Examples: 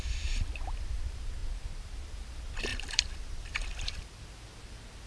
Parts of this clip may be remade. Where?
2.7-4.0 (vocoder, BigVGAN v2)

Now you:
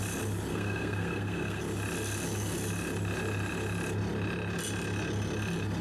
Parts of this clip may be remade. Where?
0.5-1.6 (codec, SNAC)